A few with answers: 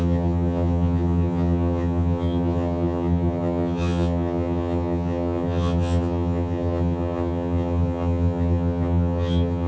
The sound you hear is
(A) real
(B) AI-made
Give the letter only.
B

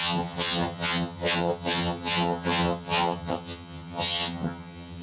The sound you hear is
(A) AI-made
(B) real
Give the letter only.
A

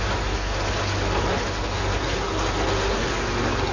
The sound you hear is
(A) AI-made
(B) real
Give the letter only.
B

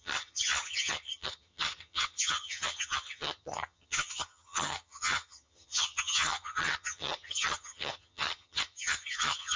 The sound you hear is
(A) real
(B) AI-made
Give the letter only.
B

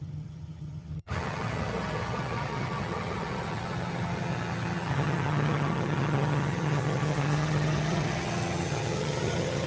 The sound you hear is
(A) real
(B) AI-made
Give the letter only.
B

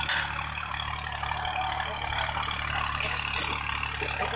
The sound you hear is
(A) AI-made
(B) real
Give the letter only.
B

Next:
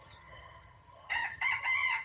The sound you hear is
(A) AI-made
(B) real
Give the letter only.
A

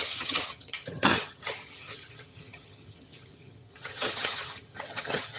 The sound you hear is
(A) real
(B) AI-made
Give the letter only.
B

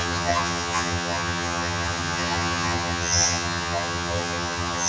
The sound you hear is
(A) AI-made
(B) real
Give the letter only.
A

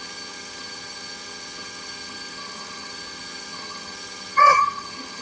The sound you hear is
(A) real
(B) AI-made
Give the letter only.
B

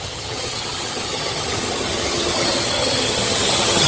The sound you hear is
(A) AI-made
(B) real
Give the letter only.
A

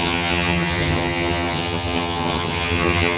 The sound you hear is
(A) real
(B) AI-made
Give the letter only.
B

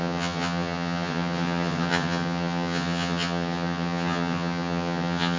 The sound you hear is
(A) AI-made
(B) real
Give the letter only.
A